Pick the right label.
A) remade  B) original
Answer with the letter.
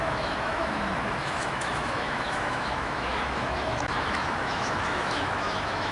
A